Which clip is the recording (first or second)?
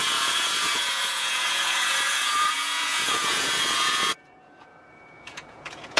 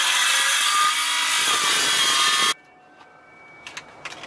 second